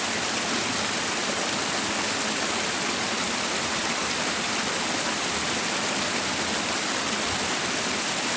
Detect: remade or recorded recorded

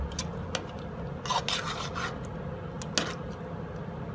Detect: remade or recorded recorded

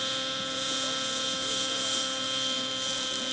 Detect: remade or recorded recorded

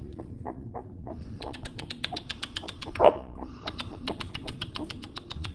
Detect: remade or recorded remade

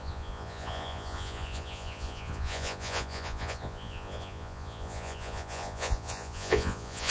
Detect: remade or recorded remade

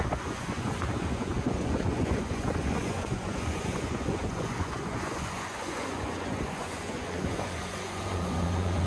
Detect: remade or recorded remade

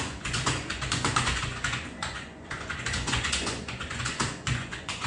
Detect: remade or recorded remade